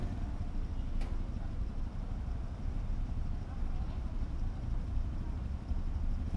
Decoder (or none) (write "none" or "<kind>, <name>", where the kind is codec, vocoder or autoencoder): none